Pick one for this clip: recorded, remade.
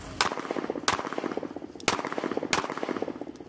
recorded